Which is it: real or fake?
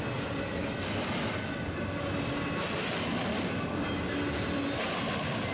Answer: real